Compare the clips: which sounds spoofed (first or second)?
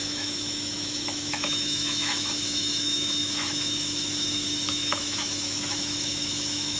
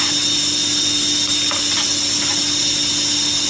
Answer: first